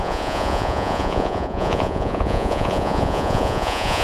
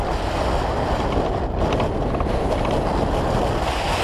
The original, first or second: second